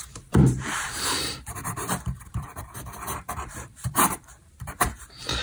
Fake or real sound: fake